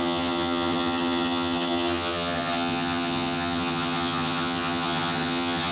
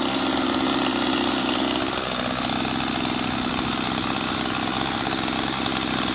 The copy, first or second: first